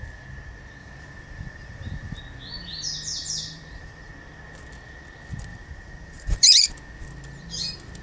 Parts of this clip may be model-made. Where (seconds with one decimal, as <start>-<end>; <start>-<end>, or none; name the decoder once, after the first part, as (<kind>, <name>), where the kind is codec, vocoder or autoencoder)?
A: 0.8-2.2 (vocoder, BigVGAN v2); 2.7-4.1; 5.5-6.7